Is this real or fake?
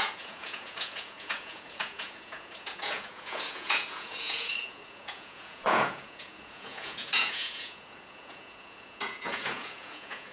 fake